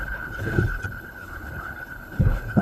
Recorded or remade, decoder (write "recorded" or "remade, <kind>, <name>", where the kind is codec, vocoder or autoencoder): remade, codec, HILCodec